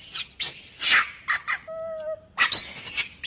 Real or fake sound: real